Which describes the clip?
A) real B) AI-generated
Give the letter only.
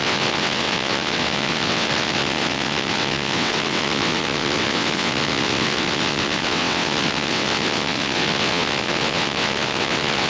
B